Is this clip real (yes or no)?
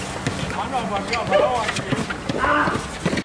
yes